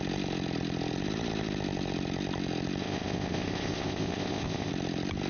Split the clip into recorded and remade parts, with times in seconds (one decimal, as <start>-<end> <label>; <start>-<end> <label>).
0.0-2.8 recorded; 2.8-4.7 remade; 4.7-5.3 recorded